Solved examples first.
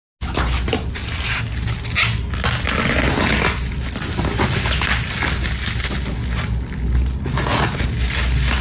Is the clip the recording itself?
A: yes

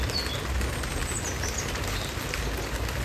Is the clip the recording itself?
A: yes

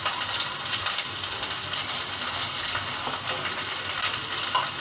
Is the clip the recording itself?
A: yes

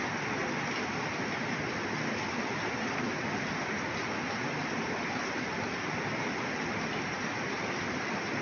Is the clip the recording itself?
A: yes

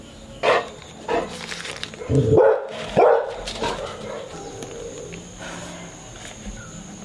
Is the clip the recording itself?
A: yes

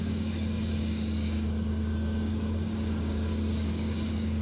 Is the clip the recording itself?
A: no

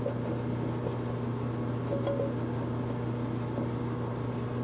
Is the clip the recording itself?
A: yes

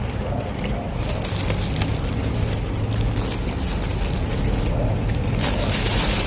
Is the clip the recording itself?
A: yes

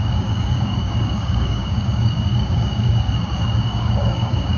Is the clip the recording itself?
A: no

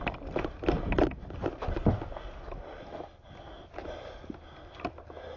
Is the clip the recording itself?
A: yes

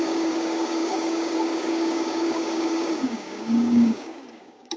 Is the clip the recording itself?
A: no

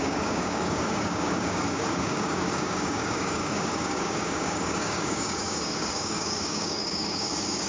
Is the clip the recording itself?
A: no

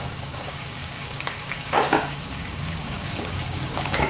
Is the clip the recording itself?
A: no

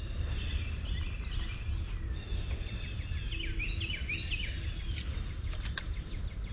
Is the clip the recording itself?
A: yes